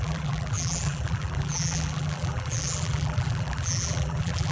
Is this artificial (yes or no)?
yes